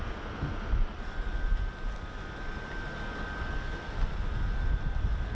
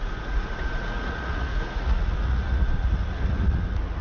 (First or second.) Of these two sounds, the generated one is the second